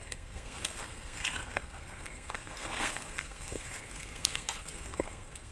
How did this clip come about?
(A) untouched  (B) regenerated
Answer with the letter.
B